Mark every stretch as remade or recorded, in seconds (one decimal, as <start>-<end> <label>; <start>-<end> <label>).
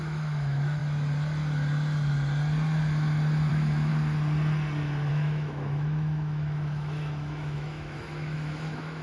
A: 0.0-0.8 remade; 0.8-3.5 recorded; 3.5-3.9 remade; 3.9-5.1 recorded; 5.1-9.0 remade